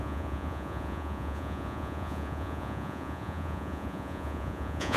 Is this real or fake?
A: fake